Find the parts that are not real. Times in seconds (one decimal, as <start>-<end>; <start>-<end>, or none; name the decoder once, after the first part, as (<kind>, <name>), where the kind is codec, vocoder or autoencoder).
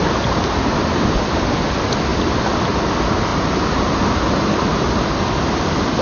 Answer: none